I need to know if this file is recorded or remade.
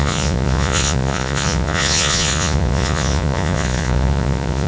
remade